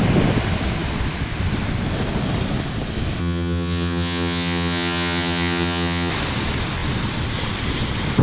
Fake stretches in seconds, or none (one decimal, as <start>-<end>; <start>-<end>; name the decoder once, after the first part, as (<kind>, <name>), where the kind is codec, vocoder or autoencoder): 3.2-6.1 (vocoder, HiFi-GAN)